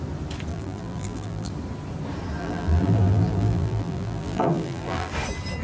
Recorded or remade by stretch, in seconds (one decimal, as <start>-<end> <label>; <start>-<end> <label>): 0.0-0.5 recorded; 0.5-1.5 remade; 1.5-2.4 recorded; 2.4-5.1 remade; 5.1-5.6 recorded